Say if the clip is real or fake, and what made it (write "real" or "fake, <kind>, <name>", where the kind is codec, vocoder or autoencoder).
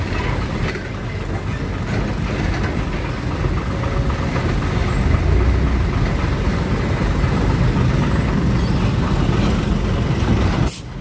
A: real